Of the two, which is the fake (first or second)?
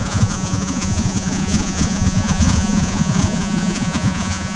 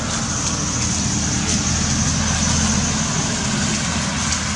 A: first